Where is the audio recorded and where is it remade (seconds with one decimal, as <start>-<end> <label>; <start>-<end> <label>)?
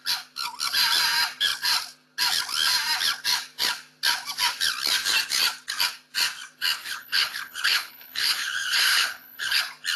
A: 0.0-6.8 recorded; 6.8-9.6 remade; 9.6-10.0 recorded